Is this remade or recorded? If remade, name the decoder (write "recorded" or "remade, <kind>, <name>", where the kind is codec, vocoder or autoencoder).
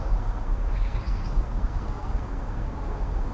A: remade, codec, SNAC